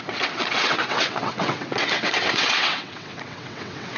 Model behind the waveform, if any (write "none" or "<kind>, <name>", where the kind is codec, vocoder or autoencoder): vocoder, WaveNeXt